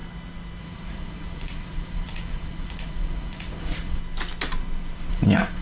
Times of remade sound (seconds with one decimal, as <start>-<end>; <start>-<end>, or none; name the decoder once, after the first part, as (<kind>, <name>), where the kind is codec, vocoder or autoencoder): 0.6-4.0 (vocoder, Vocos); 5.1-5.6